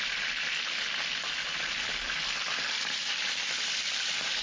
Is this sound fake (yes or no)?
yes